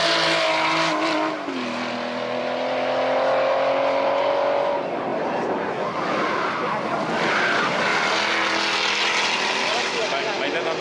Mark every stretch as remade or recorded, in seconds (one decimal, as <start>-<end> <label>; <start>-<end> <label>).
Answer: 0.0-10.8 recorded